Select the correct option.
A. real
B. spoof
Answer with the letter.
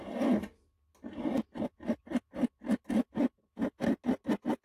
A